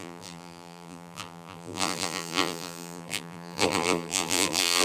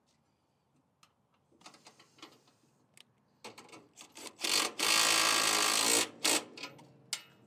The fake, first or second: first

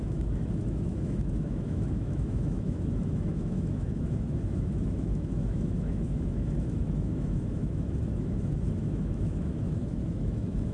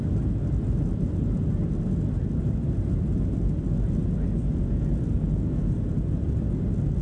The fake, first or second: first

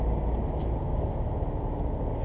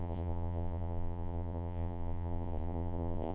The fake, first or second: second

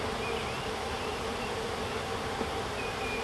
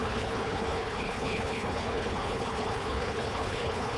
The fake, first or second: second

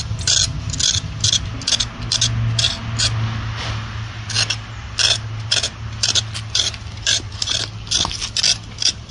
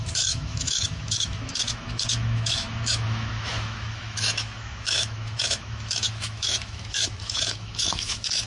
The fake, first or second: second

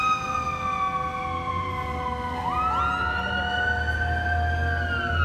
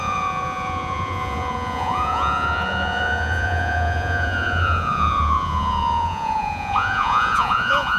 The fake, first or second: second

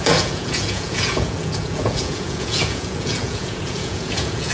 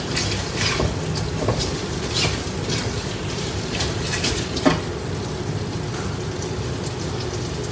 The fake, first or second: first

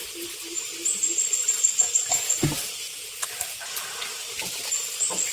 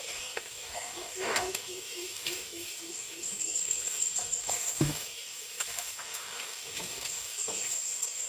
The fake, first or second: second